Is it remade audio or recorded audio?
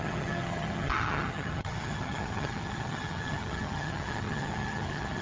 remade